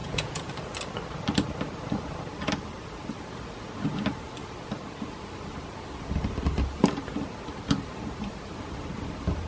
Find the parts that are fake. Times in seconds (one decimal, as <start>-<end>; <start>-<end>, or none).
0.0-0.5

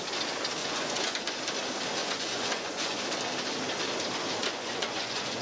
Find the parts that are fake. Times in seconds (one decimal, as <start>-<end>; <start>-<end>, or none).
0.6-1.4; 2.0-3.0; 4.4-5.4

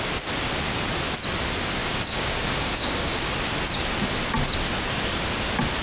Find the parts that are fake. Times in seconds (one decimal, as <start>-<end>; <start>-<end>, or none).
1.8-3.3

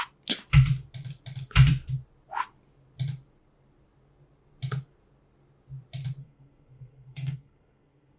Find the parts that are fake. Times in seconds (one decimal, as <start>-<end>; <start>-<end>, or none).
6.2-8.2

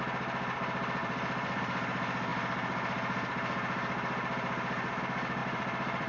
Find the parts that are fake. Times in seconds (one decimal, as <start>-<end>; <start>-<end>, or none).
1.0-1.6; 5.4-6.1

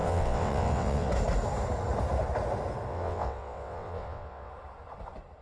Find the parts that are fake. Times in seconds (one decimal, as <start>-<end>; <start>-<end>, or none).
0.0-1.1; 2.9-4.5

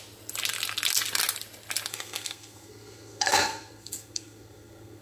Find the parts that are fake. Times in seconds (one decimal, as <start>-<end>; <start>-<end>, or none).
1.9-5.0